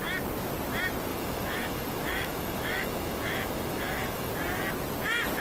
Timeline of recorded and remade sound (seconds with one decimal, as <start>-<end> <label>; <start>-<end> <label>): 0.0-1.1 recorded; 1.1-4.3 remade; 4.3-5.4 recorded